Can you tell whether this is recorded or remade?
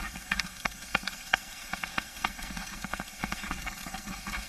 remade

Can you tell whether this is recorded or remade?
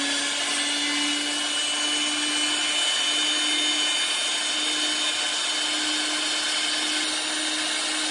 recorded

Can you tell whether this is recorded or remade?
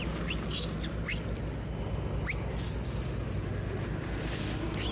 recorded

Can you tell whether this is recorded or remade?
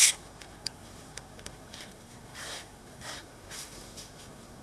remade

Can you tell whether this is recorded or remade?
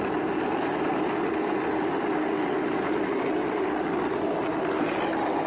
recorded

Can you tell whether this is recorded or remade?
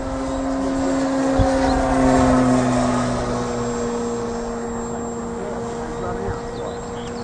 recorded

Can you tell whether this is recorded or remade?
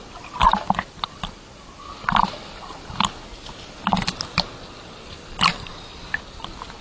recorded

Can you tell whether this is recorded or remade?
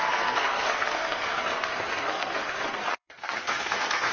remade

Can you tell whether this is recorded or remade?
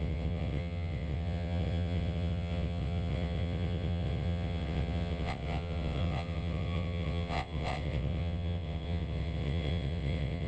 remade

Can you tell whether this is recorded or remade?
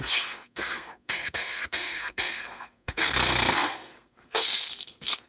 remade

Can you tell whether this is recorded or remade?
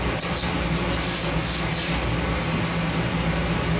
recorded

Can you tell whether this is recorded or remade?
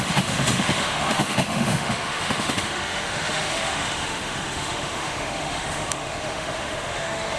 remade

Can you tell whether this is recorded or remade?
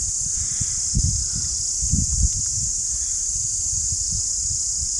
remade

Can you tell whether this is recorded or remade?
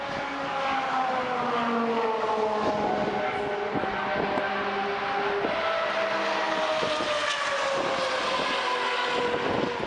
recorded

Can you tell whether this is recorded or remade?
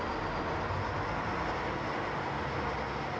recorded